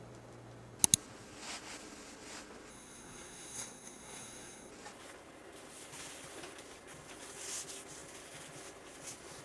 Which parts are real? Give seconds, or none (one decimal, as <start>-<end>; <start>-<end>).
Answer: 0.0-2.7; 4.7-9.4